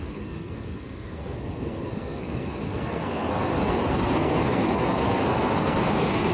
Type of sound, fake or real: fake